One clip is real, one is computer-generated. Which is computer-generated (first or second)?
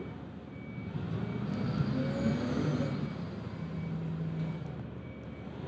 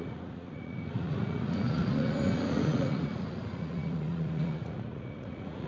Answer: second